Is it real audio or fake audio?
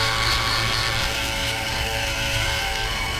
fake